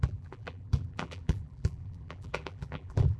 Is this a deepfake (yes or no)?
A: yes